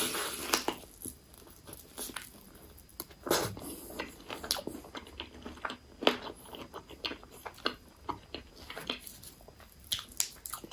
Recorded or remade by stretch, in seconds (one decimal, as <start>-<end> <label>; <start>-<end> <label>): 0.0-10.7 recorded